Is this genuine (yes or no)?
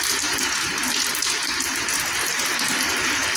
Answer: no